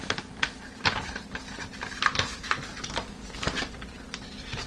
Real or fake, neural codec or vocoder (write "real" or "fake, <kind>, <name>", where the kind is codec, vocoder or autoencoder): real